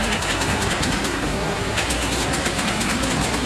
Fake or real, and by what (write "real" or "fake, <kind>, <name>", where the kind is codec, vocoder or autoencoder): fake, codec, SNAC